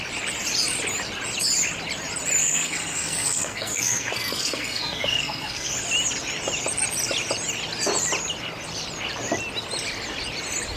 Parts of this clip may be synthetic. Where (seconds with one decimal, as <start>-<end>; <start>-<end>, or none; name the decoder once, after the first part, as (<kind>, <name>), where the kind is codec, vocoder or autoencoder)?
2.4-5.7 (codec, SNAC)